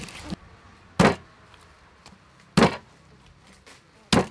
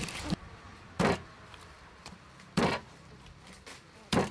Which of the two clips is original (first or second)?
first